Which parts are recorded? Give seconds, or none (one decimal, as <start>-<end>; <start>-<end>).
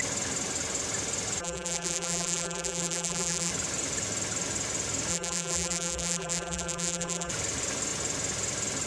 0.0-1.4; 3.5-5.1; 7.3-8.9